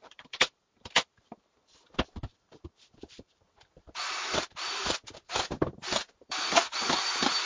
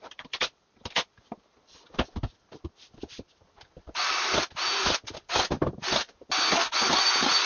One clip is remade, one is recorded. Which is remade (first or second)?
first